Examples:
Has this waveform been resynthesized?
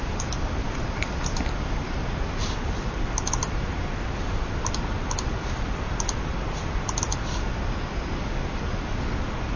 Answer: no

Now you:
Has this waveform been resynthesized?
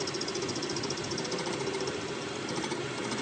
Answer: no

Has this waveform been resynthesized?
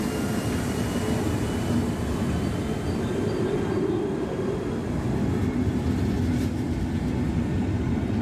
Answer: no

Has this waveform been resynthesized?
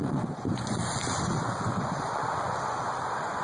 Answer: yes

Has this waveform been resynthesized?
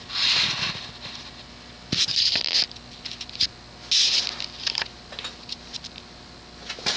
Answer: no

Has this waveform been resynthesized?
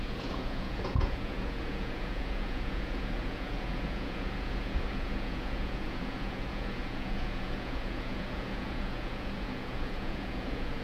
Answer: yes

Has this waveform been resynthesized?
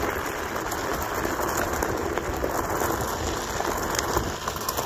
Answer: no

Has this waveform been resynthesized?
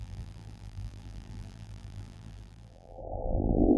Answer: yes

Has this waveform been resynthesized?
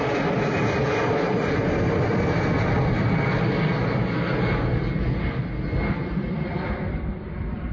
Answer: no